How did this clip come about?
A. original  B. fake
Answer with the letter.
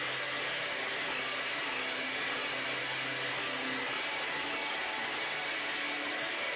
A